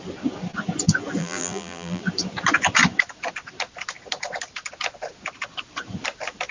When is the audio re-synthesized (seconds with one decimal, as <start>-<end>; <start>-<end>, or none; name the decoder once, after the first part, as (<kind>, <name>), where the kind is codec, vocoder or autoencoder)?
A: 1.2-2.0 (vocoder, BigVGAN v2)